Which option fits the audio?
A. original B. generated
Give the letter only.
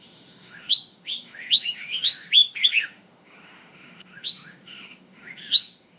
B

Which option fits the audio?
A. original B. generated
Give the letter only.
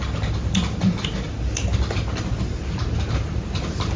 A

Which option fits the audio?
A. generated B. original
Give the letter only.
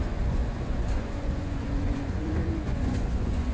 A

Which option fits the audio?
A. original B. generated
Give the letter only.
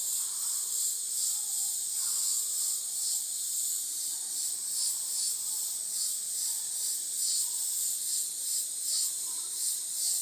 A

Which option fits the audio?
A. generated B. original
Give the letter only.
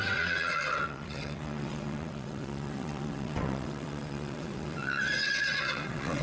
A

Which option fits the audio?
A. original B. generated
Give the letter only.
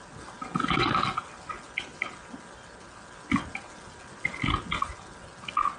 A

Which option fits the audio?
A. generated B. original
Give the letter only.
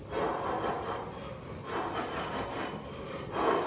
B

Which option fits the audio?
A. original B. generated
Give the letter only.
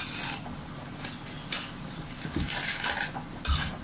A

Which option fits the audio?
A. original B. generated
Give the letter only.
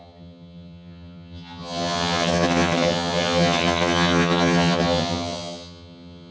B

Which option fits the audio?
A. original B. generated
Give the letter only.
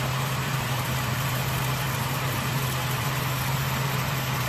B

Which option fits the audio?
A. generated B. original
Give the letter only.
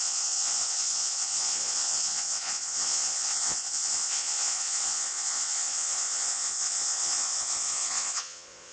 A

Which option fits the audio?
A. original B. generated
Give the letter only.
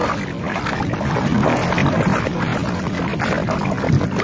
A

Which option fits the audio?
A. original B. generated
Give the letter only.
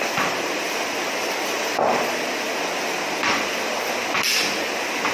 A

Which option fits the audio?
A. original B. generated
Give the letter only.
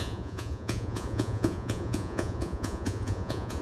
B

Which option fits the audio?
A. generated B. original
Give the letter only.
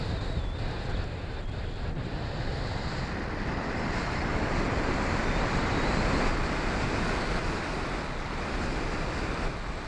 B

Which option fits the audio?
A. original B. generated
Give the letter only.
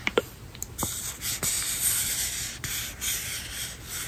A